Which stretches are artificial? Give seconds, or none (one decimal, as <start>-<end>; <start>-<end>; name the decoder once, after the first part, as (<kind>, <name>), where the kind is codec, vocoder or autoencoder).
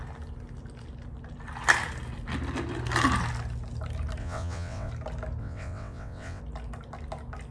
4.2-4.9 (vocoder, WaveNeXt); 5.4-6.4